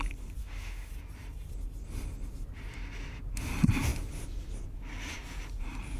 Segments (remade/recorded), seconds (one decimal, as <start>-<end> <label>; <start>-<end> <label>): 0.0-0.4 recorded; 0.4-0.9 remade; 0.9-6.0 recorded